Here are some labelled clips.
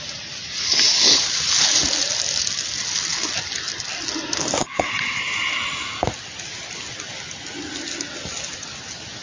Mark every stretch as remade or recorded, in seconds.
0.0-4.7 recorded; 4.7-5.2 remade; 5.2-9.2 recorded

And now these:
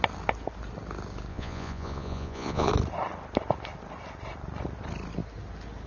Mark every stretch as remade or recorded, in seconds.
0.0-1.3 recorded; 1.3-2.7 remade; 2.7-5.9 recorded

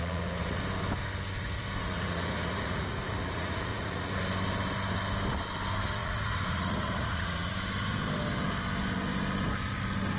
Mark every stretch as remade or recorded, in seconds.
0.0-0.6 remade; 0.6-1.8 recorded; 1.8-4.1 remade; 4.1-6.0 recorded; 6.0-7.5 remade; 7.5-10.2 recorded

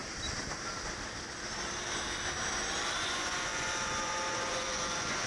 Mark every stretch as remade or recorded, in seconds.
0.0-3.0 recorded; 3.0-5.3 remade

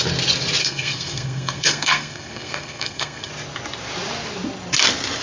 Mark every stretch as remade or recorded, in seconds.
0.0-0.6 recorded; 0.6-3.3 remade; 3.3-5.2 recorded